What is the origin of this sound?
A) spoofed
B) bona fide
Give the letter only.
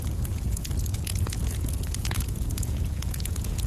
A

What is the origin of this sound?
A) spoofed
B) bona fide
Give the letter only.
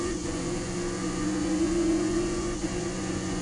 A